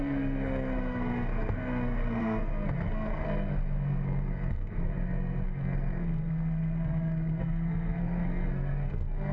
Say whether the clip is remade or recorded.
remade